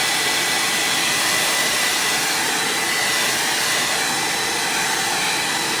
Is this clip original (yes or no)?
yes